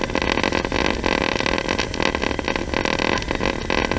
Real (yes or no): yes